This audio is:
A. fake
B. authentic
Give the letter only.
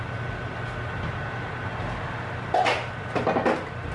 B